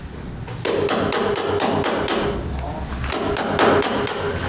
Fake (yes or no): no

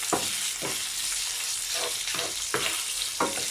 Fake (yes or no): no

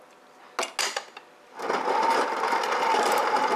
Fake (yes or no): no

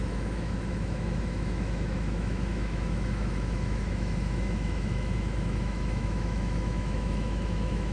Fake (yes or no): yes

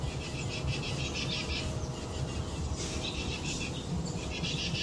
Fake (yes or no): no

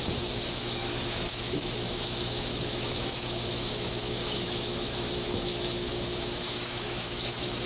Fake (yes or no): yes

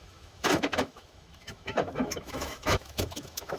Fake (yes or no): yes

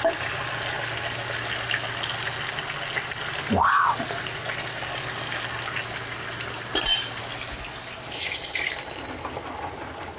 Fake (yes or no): no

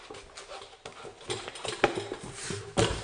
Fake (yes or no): no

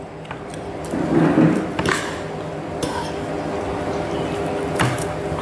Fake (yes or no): no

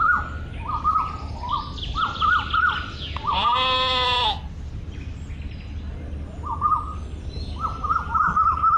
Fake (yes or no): no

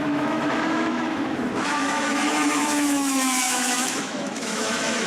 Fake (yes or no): yes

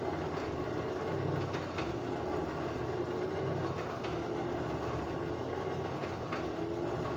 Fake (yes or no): no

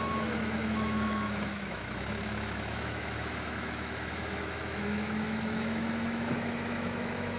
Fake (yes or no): yes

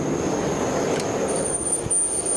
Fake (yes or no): no